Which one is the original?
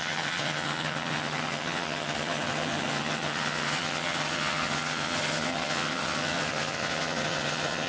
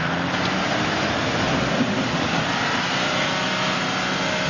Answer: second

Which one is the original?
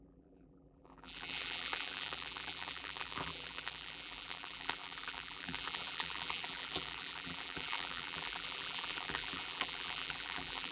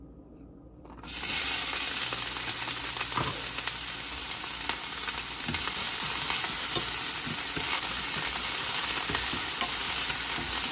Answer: second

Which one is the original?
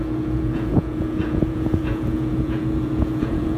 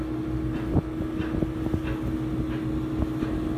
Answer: second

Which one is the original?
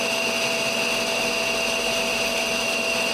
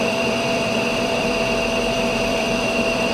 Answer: first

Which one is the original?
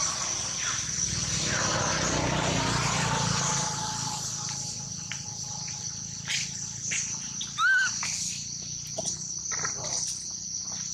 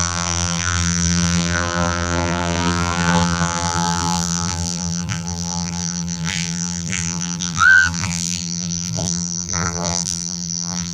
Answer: first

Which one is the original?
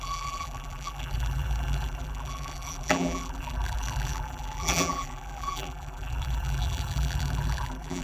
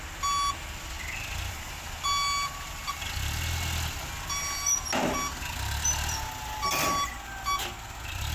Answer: second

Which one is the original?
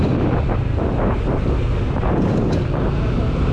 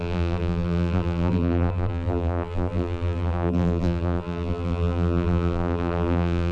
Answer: first